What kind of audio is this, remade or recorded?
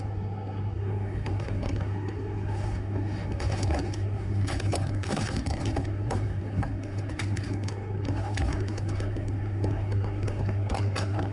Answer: remade